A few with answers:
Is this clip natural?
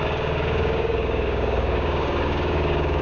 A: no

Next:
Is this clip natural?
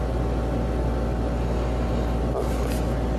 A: yes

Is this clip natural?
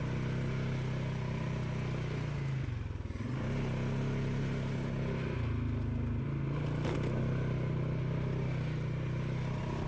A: yes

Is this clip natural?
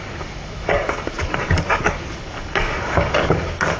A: no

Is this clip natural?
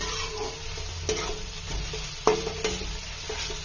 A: yes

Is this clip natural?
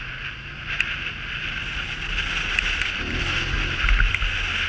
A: yes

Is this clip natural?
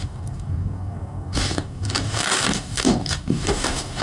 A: no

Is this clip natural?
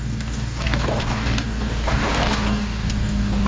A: no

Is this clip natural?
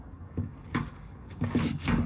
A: no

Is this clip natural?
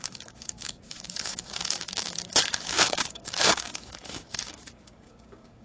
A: no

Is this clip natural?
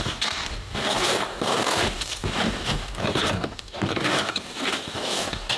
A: no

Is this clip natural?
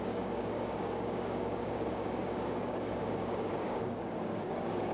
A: no